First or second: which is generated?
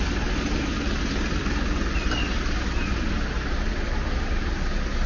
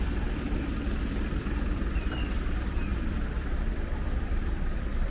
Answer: second